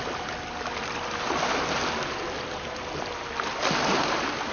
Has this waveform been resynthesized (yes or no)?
no